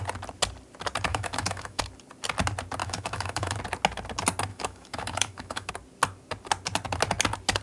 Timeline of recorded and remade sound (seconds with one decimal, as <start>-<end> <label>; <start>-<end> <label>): 0.0-1.1 recorded; 1.1-1.8 remade; 1.8-2.8 recorded; 2.8-3.6 remade; 3.6-4.5 recorded; 4.5-5.7 remade; 5.7-7.6 recorded